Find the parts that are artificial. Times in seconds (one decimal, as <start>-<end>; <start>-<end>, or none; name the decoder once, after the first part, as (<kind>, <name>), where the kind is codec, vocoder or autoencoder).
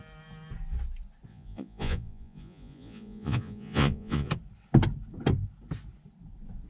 1.3-4.3 (vocoder, Vocos)